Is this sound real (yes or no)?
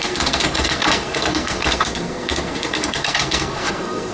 no